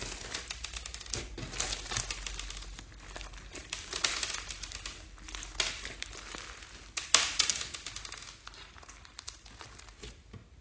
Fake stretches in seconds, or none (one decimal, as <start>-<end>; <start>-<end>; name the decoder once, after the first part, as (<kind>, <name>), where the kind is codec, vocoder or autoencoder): 3.6-4.2 (vocoder, BigVGAN v2)